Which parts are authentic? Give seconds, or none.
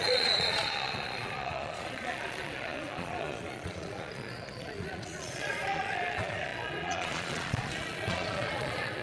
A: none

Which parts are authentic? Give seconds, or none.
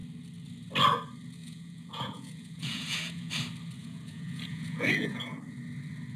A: 0.0-1.4; 3.3-3.8; 5.4-6.2